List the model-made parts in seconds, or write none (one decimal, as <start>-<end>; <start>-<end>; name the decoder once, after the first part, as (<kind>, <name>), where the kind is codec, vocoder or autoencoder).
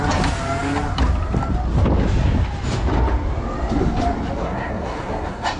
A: 4.4-5.6 (codec, SNAC)